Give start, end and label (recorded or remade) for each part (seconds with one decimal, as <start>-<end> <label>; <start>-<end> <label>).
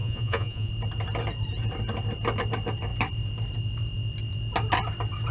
0.0-0.7 remade; 0.7-5.3 recorded